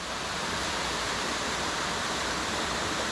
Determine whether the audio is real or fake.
real